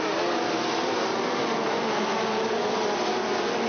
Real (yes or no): yes